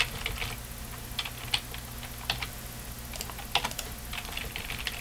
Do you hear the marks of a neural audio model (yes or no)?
no